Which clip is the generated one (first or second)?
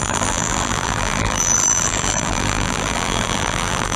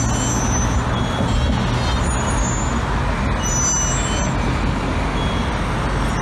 first